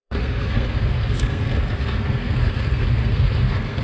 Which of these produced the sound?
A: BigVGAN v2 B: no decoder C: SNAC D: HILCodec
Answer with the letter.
C